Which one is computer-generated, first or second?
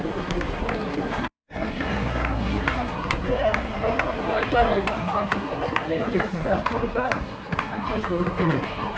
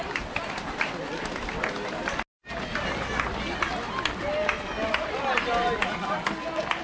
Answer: first